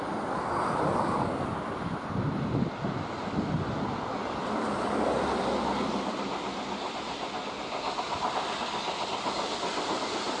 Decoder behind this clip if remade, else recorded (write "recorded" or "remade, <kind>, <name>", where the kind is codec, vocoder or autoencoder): recorded